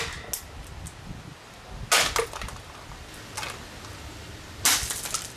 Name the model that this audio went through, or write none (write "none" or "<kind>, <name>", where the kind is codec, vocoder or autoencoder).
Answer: none